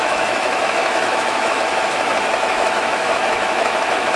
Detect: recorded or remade remade